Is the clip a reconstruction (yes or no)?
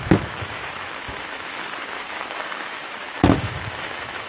yes